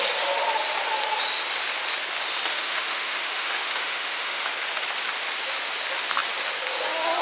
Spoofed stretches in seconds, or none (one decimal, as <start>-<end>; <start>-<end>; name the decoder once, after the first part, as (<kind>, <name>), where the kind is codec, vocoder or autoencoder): 2.5-4.5 (autoencoder, DAC-VAE)